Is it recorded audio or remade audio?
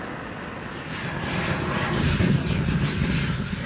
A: recorded